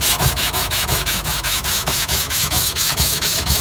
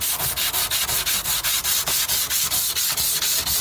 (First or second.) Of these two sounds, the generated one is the first